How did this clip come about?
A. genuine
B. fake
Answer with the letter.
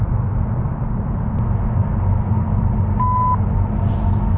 A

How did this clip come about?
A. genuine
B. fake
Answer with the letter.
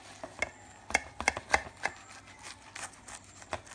A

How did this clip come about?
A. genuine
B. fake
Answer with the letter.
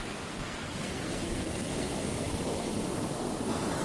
B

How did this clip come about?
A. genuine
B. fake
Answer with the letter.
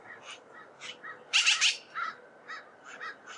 A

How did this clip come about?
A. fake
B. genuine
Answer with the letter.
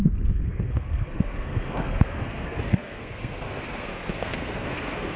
A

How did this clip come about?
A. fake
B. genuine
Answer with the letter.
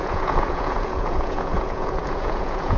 A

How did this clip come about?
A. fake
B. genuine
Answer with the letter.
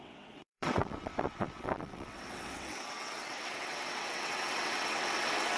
A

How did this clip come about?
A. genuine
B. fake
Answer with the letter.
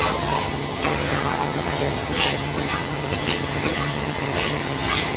B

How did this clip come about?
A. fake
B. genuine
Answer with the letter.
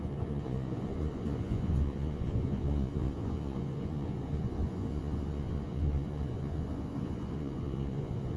A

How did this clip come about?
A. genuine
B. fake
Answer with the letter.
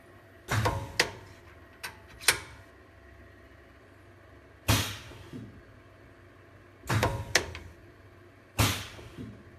A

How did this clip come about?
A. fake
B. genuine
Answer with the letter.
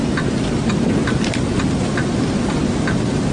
B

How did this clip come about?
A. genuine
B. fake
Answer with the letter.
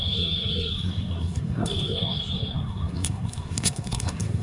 B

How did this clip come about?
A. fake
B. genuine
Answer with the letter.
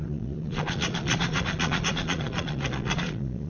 A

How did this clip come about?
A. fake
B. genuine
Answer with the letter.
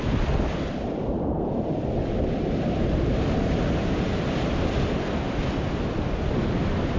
B